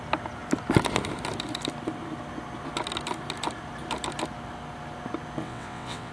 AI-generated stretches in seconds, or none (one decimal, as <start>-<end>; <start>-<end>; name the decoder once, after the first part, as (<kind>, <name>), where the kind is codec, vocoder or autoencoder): 5.4-6.1 (vocoder, WaveNeXt)